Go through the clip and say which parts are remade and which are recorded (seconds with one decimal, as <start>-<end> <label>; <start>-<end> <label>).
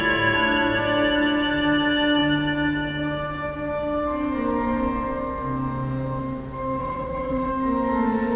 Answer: 0.0-6.8 recorded; 6.8-7.5 remade; 7.5-8.4 recorded